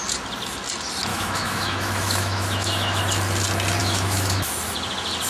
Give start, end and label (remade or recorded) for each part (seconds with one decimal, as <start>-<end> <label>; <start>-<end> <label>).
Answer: 0.0-1.1 recorded; 1.1-3.0 remade; 3.0-3.8 recorded; 3.8-4.5 remade; 4.5-5.3 recorded